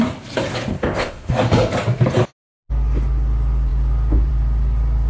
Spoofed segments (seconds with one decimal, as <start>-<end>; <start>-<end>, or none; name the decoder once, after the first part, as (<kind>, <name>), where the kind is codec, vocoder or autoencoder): 0.7-1.3 (codec, ZipCodec)